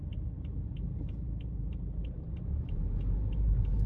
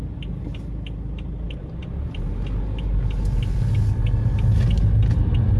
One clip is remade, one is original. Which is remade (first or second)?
first